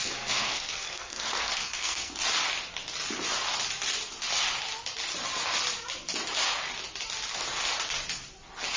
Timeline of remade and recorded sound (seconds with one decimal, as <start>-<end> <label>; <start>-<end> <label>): 0.0-2.1 remade; 2.1-8.8 recorded